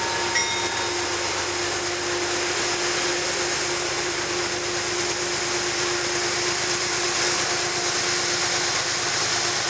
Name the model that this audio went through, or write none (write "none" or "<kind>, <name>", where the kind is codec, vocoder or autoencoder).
none